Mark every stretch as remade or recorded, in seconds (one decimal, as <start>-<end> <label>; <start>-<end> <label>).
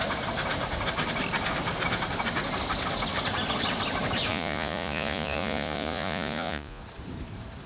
0.0-4.3 recorded; 4.3-6.8 remade; 6.8-7.7 recorded